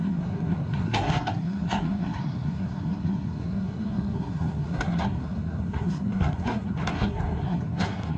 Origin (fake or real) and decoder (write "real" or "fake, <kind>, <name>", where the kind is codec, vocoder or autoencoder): fake, codec, SNAC